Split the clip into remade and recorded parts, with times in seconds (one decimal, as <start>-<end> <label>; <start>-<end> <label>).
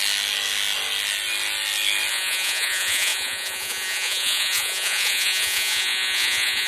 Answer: 0.0-2.1 recorded; 2.1-6.7 remade